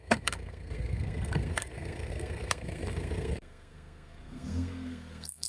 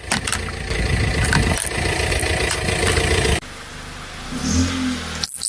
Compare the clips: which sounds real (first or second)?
second